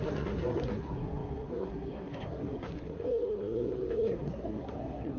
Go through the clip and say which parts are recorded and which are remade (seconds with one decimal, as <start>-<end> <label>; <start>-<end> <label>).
0.0-5.2 remade